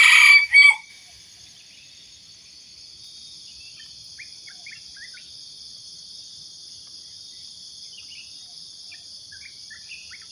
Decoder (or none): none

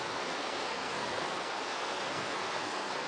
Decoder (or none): codec, SNAC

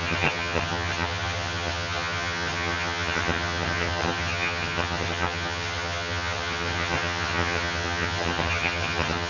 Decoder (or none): vocoder, HiFi-GAN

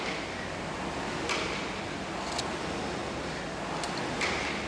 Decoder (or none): none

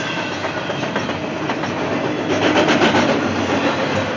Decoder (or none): none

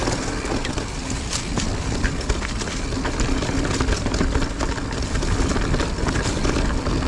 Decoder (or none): none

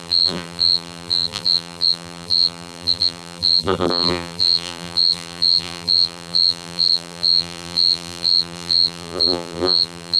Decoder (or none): vocoder, BigVGAN v2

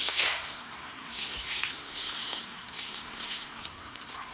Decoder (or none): codec, SNAC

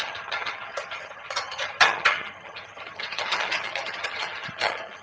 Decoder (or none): vocoder, HiFi-GAN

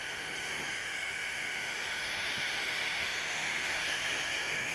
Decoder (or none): autoencoder, DAC-VAE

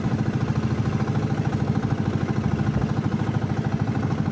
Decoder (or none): none